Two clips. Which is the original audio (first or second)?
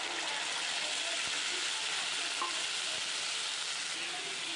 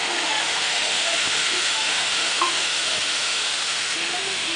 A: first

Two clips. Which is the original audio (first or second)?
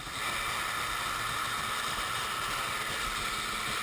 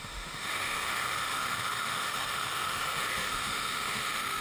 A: first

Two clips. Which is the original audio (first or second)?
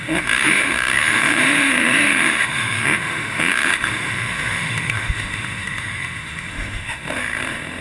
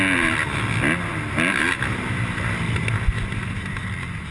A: second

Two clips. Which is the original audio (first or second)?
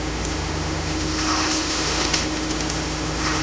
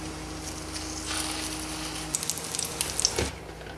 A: second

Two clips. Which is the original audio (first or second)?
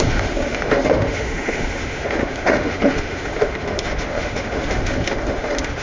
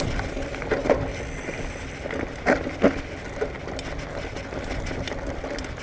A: second